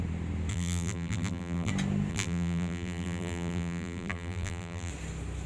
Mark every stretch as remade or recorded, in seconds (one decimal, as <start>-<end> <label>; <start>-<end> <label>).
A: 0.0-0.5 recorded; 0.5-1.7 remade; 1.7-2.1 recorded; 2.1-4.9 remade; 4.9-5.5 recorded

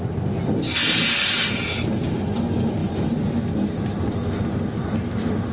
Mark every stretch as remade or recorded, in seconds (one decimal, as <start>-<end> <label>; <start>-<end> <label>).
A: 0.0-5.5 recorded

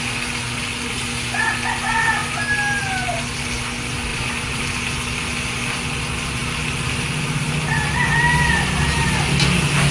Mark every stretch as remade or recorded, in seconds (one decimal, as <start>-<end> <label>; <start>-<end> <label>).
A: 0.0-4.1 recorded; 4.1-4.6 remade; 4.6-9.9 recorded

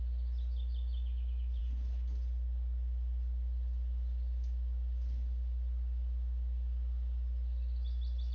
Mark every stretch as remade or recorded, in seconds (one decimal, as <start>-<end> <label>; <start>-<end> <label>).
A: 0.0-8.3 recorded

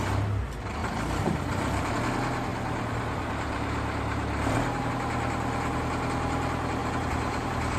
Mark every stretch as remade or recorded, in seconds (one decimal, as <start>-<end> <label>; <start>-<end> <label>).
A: 0.0-0.8 recorded; 0.8-1.9 remade; 1.9-2.5 recorded; 2.5-4.9 remade; 4.9-6.8 recorded; 6.8-7.8 remade

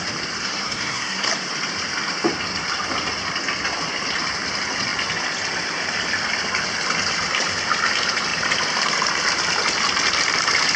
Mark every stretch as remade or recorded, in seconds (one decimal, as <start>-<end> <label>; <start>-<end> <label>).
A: 0.0-0.4 recorded; 0.4-1.3 remade; 1.3-10.8 recorded

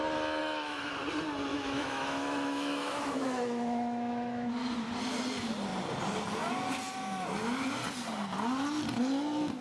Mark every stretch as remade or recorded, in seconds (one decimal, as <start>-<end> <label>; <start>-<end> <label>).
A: 0.0-0.4 recorded; 0.4-0.9 remade; 0.9-1.5 recorded; 1.5-4.5 remade; 4.5-9.6 recorded